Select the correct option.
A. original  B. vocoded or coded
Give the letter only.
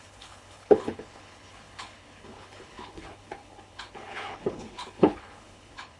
B